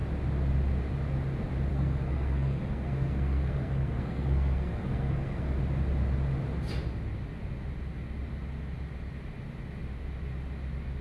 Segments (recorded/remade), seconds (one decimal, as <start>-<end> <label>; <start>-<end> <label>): 0.0-1.7 recorded; 1.7-5.6 remade; 5.6-11.0 recorded